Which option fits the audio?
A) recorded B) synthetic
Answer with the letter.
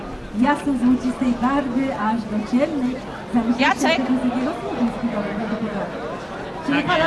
A